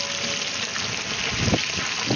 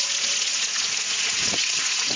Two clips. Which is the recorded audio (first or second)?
first